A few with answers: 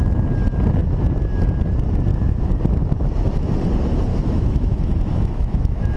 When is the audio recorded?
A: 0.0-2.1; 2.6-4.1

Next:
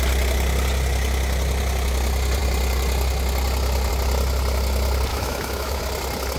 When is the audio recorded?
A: 0.0-5.1; 5.8-6.4

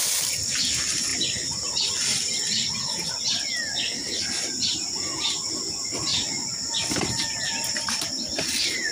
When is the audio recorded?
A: 0.0-8.9

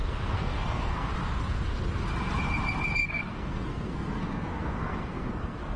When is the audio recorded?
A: 1.1-3.0